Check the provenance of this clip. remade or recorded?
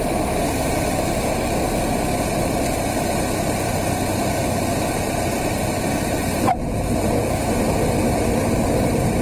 recorded